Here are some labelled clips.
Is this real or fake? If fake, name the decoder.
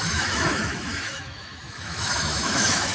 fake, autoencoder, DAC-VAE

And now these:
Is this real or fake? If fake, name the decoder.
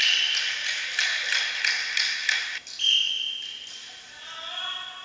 real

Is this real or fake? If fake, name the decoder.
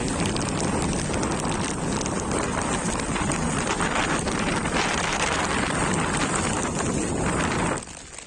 real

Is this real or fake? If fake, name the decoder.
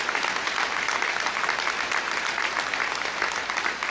real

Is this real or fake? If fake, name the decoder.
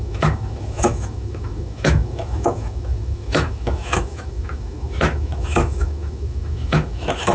fake, autoencoder, DAC-VAE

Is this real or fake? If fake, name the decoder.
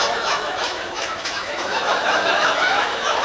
fake, autoencoder, DAC-VAE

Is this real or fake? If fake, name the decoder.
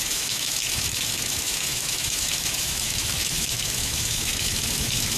fake, autoencoder, DAC-VAE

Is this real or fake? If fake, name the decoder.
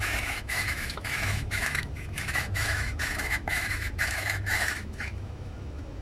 fake, autoencoder, DAC-VAE